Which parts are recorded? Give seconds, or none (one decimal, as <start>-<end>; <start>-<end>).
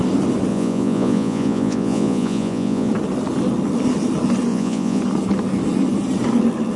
0.0-0.5; 2.9-4.5; 5.0-6.8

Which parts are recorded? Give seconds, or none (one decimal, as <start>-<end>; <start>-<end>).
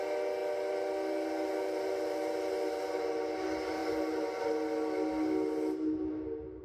0.0-6.6